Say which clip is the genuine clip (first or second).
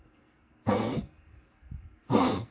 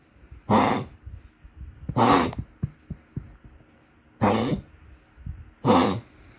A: second